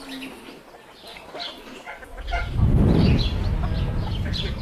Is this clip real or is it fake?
real